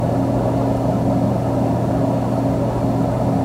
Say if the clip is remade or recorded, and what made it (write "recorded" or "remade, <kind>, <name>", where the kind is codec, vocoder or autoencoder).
recorded